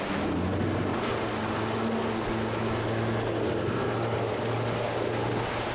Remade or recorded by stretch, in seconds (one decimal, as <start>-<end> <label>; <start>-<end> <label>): 0.0-5.7 recorded